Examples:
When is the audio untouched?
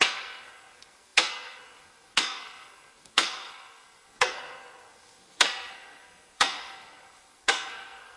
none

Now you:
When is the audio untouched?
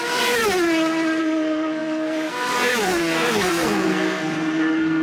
0.4-1.2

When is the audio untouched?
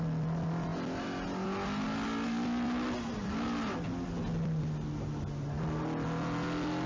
0.0-6.9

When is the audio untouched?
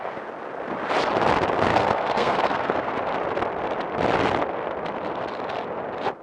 0.0-1.7; 2.9-6.2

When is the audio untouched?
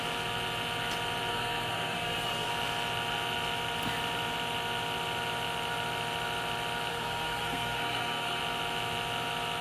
0.0-1.3; 2.5-6.9; 8.4-9.6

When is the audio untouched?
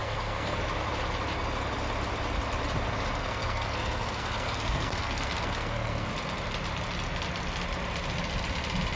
0.6-3.2; 6.1-9.0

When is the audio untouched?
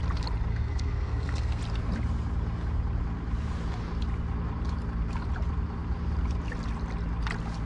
0.0-0.5; 1.6-7.7